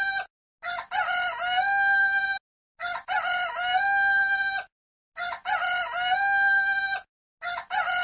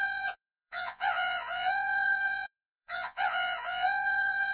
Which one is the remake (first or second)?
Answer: second